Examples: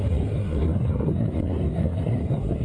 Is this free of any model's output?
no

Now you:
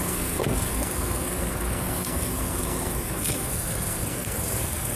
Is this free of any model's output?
no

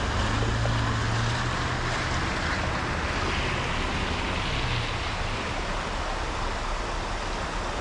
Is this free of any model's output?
yes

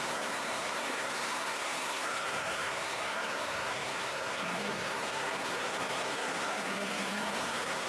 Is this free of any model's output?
no